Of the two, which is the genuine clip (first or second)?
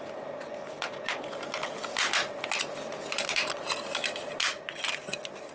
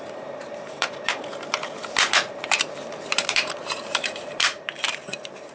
first